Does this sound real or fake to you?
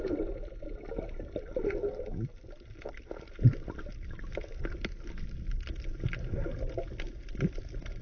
real